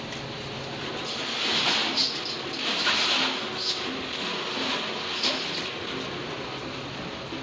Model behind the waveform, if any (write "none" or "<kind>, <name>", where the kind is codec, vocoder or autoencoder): none